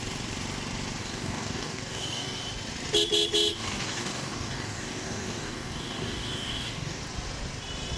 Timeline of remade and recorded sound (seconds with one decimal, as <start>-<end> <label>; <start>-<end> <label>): 0.0-1.0 recorded; 1.0-2.4 remade; 2.4-3.5 recorded; 3.5-7.0 remade; 7.0-8.0 recorded